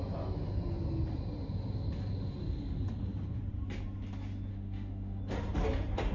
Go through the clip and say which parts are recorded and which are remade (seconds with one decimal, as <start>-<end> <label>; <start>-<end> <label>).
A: 0.0-4.5 recorded; 4.5-5.2 remade; 5.2-6.1 recorded